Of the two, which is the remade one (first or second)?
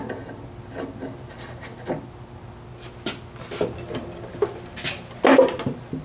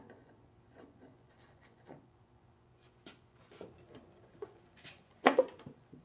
second